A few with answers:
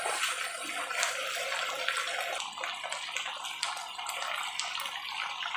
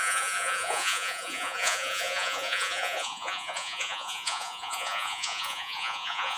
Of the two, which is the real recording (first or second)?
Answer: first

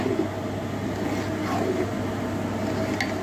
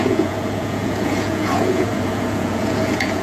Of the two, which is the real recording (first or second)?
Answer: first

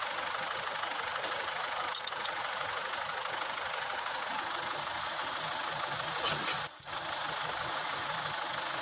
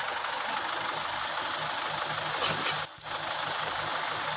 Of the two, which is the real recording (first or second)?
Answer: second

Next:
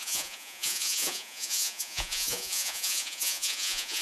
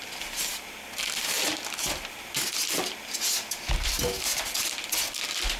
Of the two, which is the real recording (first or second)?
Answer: second